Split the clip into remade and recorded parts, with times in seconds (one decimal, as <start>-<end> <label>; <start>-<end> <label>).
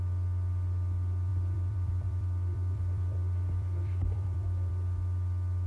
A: 0.0-1.3 recorded; 1.3-4.7 remade; 4.7-5.7 recorded